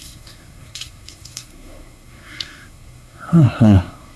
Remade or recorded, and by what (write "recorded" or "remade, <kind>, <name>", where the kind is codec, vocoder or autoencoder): remade, codec, SNAC